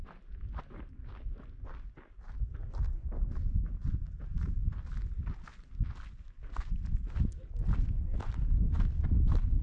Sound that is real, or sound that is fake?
real